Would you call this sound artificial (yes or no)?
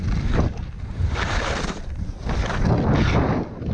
no